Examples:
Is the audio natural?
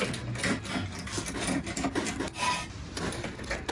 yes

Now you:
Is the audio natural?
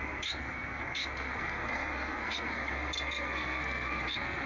no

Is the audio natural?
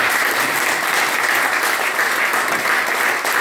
yes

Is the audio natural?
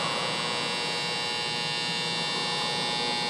yes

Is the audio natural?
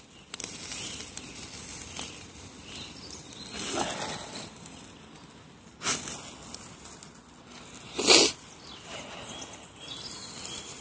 yes